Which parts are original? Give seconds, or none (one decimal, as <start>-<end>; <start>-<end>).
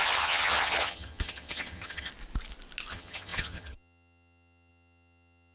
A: 2.1-2.9